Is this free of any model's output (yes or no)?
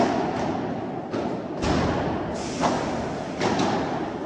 yes